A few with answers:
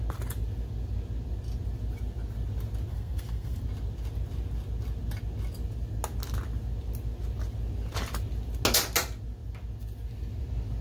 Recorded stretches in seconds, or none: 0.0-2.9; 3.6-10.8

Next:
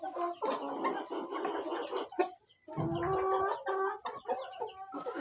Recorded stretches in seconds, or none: 0.0-5.2

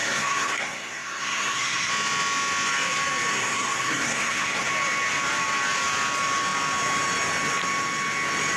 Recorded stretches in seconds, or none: 1.9-3.3; 4.7-8.6

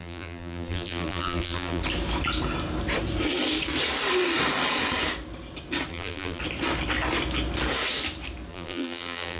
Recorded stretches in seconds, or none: 1.8-5.9; 6.4-8.5

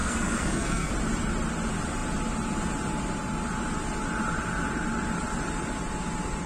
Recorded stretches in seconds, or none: 0.9-6.5